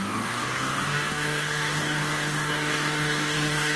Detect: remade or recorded remade